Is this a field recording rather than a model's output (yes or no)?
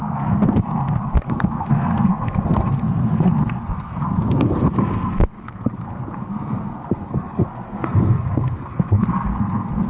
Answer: no